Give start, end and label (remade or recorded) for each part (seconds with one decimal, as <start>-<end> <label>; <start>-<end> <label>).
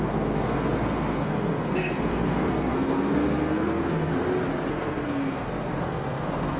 0.0-4.1 remade; 4.1-4.7 recorded; 4.7-6.6 remade